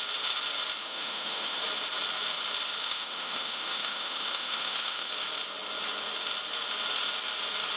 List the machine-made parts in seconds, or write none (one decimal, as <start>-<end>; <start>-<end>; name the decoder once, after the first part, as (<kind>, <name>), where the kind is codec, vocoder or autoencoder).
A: 0.8-1.6 (autoencoder, DAC-VAE); 2.8-5.1